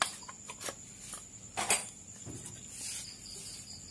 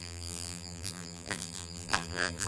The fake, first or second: second